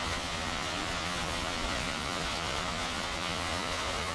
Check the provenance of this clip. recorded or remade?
remade